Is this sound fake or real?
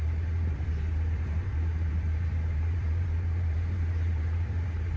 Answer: fake